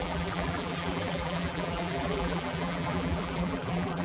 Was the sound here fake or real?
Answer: fake